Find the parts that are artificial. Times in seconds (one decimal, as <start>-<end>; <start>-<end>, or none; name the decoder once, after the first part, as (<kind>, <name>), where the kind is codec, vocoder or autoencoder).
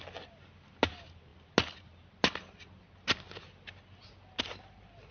none